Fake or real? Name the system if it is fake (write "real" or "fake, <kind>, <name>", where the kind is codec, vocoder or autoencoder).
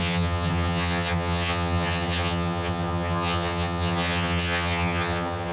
fake, vocoder, HiFi-GAN